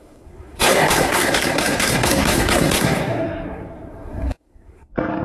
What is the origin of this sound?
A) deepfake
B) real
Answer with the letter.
A